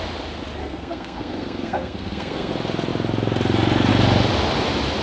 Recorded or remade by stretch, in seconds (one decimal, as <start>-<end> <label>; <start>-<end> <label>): 0.0-0.6 recorded; 0.6-2.5 remade; 2.5-5.0 recorded